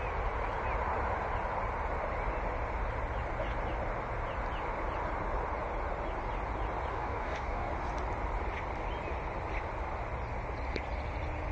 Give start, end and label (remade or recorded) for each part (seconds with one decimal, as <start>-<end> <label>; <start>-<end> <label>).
0.0-6.9 recorded; 6.9-7.7 remade; 7.7-11.5 recorded